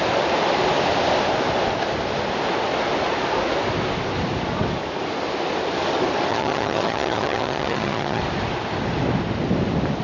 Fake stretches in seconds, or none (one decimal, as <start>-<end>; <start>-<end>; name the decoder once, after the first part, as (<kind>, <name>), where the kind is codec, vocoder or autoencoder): 6.3-8.2 (vocoder, HiFi-GAN)